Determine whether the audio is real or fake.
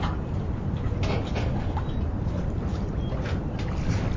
real